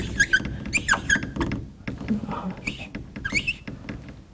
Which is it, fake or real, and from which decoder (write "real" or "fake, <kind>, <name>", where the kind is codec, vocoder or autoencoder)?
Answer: real